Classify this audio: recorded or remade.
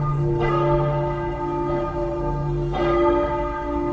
remade